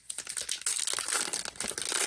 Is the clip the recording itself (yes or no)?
yes